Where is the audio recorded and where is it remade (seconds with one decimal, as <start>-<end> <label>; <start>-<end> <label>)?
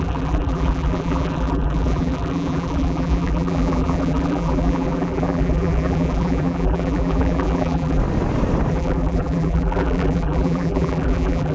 0.0-8.0 remade; 8.0-8.7 recorded; 8.7-11.5 remade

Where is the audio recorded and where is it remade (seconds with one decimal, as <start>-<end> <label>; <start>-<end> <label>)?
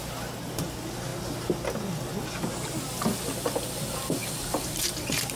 0.0-4.2 recorded; 4.2-5.4 remade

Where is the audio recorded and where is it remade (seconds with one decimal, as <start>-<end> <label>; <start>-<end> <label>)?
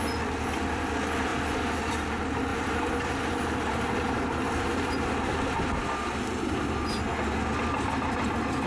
0.0-2.5 recorded; 2.5-5.1 remade; 5.1-8.7 recorded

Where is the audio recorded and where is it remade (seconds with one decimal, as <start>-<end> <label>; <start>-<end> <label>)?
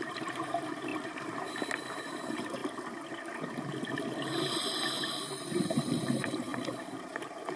0.0-2.6 remade; 2.6-5.1 recorded; 5.1-6.5 remade; 6.5-7.0 recorded; 7.0-7.6 remade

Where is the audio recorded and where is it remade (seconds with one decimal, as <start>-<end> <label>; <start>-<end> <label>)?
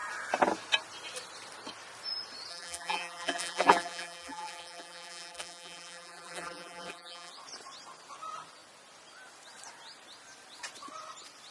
0.0-2.5 recorded; 2.5-7.3 remade; 7.3-11.5 recorded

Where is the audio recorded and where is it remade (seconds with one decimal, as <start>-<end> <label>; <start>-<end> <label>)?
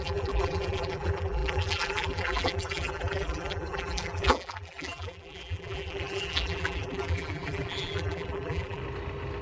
0.0-8.8 remade; 8.8-9.4 recorded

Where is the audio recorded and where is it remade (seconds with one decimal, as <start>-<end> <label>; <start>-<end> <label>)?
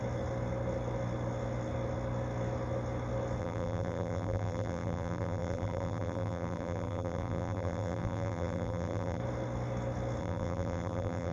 0.0-3.4 recorded; 3.4-9.2 remade; 9.2-10.2 recorded; 10.2-11.3 remade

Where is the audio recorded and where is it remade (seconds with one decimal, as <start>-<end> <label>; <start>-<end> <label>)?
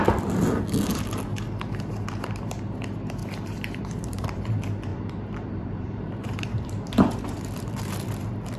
0.0-3.2 recorded; 3.2-4.4 remade; 4.4-4.9 recorded; 4.9-7.9 remade; 7.9-8.6 recorded